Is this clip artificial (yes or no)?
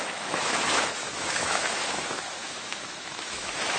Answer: yes